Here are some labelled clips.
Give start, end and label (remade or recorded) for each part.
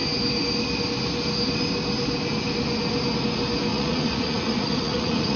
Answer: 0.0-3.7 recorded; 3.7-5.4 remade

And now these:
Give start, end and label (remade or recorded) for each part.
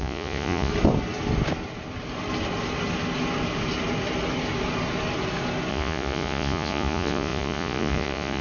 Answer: 0.0-0.7 remade; 0.7-5.7 recorded; 5.7-8.4 remade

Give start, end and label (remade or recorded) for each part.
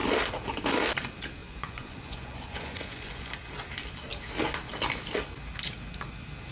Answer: 0.0-1.4 recorded; 1.4-3.3 remade; 3.3-6.5 recorded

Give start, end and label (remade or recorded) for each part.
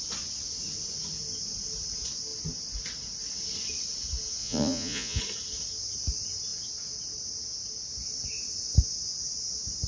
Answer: 0.0-4.4 recorded; 4.4-5.2 remade; 5.2-9.9 recorded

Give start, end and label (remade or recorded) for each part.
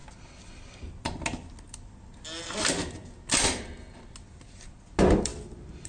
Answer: 0.0-5.9 recorded